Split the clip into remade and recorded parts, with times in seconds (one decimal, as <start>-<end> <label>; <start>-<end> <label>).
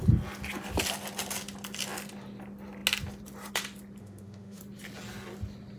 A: 0.0-4.0 recorded; 4.0-4.6 remade; 4.6-5.8 recorded